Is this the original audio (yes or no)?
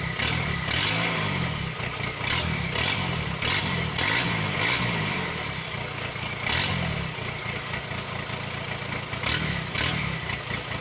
yes